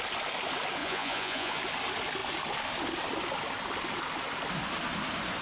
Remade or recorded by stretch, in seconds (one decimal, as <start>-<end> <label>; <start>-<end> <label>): 0.0-0.8 recorded; 0.8-1.6 remade; 1.6-5.4 recorded

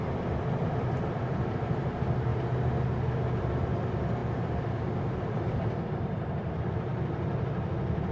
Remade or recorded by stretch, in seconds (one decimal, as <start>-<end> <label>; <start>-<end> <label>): 0.0-2.3 remade; 2.3-3.4 recorded; 3.4-6.9 remade; 6.9-7.4 recorded; 7.4-8.1 remade

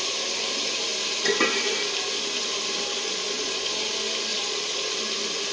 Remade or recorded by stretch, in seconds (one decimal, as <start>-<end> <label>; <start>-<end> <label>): 0.0-3.0 recorded; 3.0-3.9 remade; 3.9-4.3 recorded; 4.3-5.0 remade; 5.0-5.5 recorded

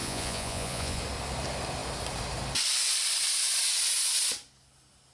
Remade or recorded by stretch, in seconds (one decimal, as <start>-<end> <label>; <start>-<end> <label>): 0.0-1.0 remade; 1.0-5.1 recorded